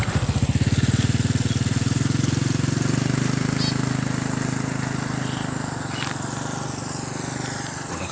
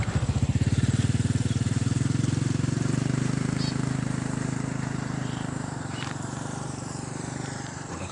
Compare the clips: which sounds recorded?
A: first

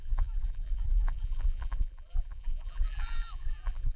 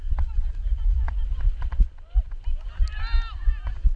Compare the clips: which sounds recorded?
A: second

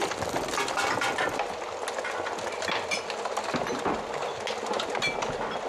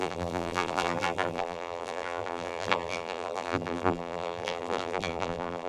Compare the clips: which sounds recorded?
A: first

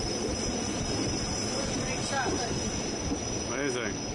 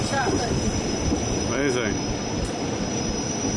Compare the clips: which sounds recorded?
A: first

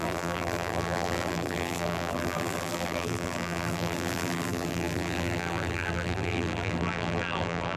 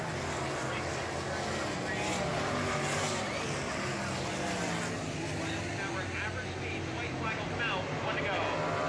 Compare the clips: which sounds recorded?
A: second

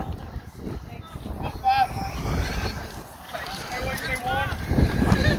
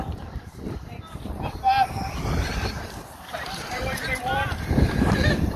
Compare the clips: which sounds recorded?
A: first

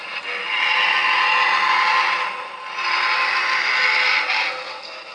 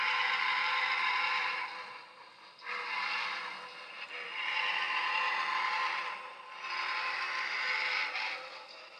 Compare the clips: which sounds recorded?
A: first